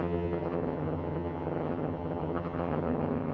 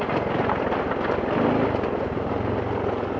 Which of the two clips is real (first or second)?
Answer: second